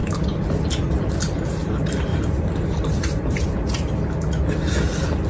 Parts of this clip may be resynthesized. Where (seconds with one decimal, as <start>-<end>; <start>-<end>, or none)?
2.1-4.1